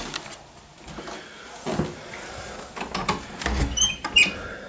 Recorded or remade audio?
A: recorded